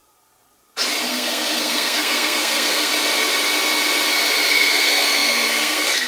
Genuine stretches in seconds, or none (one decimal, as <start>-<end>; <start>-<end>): 0.0-1.1; 2.9-4.5